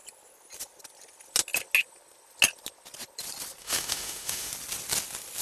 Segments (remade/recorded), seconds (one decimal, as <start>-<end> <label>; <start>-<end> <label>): 0.0-3.6 recorded; 3.6-4.5 remade; 4.5-5.4 recorded